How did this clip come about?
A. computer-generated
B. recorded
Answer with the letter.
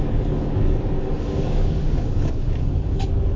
A